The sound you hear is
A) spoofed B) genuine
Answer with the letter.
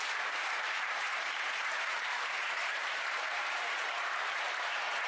A